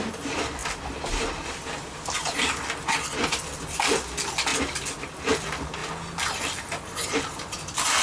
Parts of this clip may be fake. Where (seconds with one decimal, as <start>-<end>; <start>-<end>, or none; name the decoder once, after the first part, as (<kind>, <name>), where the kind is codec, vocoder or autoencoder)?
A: none

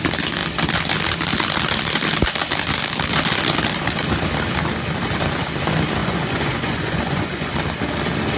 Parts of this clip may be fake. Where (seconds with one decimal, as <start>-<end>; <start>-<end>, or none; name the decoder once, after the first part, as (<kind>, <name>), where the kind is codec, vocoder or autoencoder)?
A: 6.0-7.5 (vocoder, Vocos)

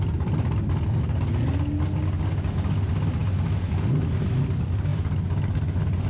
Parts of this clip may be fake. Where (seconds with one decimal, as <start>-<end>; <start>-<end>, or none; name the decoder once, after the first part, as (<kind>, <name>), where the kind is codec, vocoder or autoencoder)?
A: none